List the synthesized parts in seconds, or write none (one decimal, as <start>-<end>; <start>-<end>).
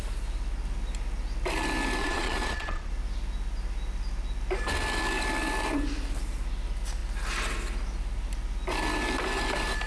2.0-2.9